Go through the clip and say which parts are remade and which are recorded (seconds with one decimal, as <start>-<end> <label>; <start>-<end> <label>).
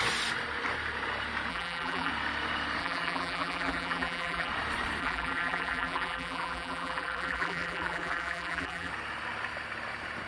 0.0-1.5 recorded; 1.5-2.1 remade; 2.1-2.8 recorded; 2.8-4.5 remade; 4.5-5.0 recorded; 5.0-8.9 remade; 8.9-10.3 recorded